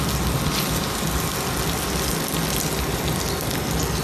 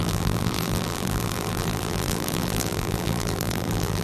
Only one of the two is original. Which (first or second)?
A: first